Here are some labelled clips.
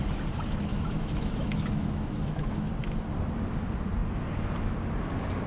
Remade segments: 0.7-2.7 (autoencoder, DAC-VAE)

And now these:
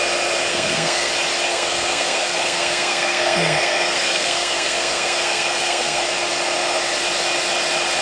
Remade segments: 0.5-1.1 (codec, SNAC); 1.5-6.0

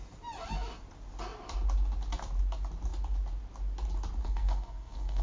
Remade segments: 4.2-5.2 (codec, SNAC)

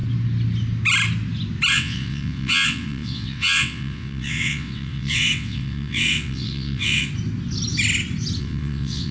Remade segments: 1.7-7.1 (vocoder, WaveNeXt); 8.4-9.1

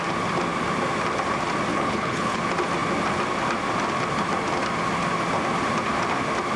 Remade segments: 1.7-2.4 (codec, HILCodec)

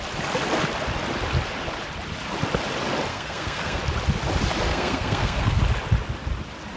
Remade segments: 3.1-3.8 (codec, SNAC); 4.7-5.6

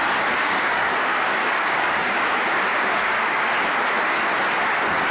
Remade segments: 0.4-3.5 (codec, DAC)